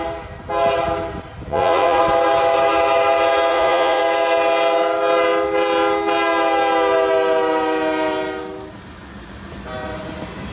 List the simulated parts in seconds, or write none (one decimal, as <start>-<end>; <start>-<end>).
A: 1.5-2.0; 3.5-4.0